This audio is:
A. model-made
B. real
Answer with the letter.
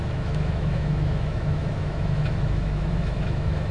A